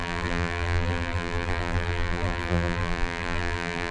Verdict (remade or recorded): remade